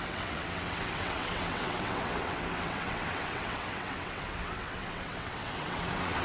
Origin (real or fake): fake